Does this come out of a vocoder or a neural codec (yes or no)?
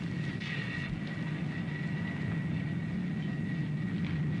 no